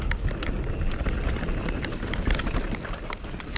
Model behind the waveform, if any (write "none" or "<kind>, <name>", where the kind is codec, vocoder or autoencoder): none